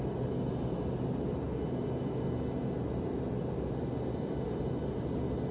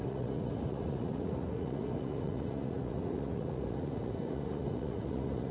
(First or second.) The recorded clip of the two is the first